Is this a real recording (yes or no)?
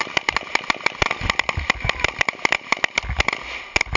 yes